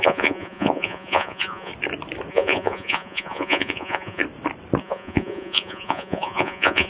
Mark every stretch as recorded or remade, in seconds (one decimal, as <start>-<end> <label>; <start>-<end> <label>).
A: 0.0-1.7 remade; 1.7-2.3 recorded; 2.3-4.2 remade; 4.2-4.8 recorded; 4.8-6.9 remade